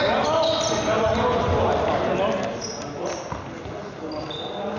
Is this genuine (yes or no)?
yes